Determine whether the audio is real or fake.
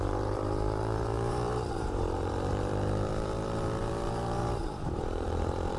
fake